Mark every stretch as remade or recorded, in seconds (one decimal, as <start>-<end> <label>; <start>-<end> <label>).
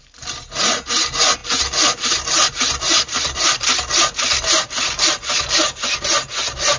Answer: 0.0-6.8 recorded